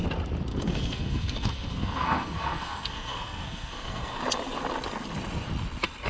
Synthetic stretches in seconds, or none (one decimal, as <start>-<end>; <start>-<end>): 0.5-4.2